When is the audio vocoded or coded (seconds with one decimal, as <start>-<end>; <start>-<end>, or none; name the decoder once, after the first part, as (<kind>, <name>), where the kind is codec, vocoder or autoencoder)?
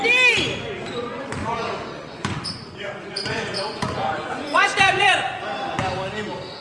1.4-5.4 (vocoder, Vocos)